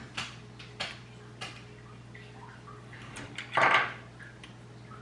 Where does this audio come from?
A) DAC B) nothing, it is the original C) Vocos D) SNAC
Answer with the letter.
B